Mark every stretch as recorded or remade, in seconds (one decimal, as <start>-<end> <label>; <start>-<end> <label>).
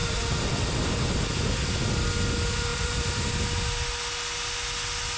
0.0-0.5 remade; 0.5-2.7 recorded; 2.7-3.2 remade; 3.2-5.2 recorded